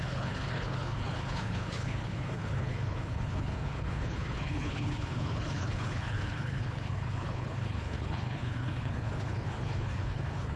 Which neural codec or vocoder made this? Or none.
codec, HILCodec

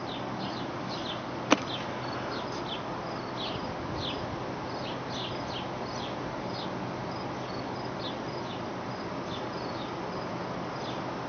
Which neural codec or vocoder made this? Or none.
none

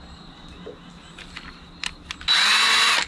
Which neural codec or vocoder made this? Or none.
none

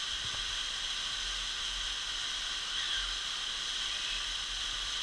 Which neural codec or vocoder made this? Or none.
none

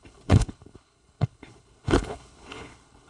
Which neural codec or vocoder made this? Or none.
codec, HILCodec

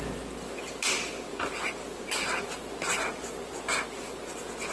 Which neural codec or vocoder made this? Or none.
none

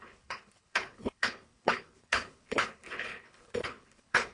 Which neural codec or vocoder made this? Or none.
codec, HILCodec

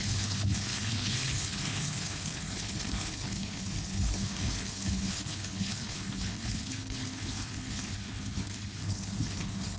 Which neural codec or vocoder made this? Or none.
codec, HILCodec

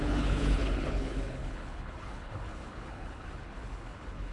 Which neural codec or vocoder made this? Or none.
codec, HILCodec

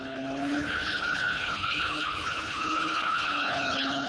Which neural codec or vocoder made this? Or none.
codec, HILCodec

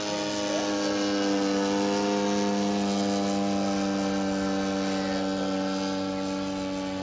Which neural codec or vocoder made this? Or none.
none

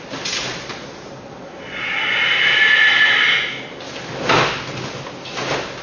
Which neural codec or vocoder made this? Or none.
none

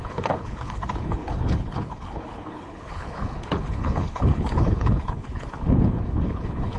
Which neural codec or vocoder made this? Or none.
codec, HILCodec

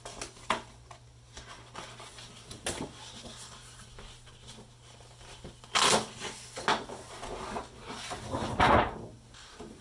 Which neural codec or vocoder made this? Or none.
none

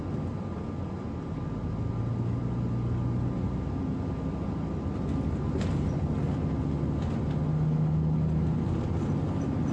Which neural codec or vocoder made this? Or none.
none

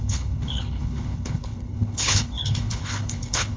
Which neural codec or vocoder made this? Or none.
codec, HILCodec